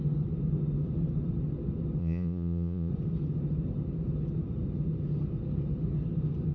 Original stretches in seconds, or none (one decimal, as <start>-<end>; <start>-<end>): 0.0-2.0; 2.9-6.5